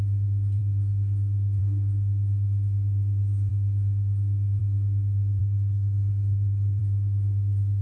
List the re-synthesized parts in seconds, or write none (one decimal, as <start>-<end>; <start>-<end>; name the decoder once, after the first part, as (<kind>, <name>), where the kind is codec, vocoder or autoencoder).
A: 5.4-6.8 (codec, HILCodec)